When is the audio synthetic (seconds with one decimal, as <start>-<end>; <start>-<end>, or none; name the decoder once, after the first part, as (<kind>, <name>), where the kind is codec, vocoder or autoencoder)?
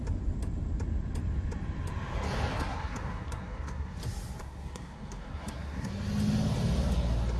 2.5-4.0 (codec, SNAC); 4.4-5.9